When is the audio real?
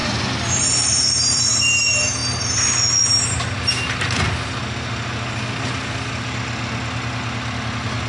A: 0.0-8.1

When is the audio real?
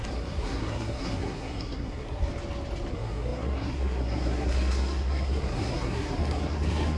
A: 2.3-2.9